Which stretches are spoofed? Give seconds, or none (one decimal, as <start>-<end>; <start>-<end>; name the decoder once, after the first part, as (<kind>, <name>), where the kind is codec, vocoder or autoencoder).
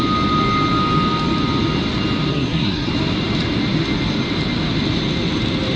2.3-2.9 (codec, SNAC)